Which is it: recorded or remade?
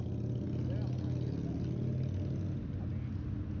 recorded